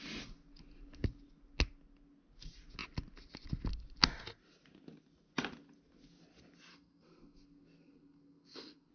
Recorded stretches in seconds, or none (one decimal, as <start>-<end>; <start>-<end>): 0.0-6.7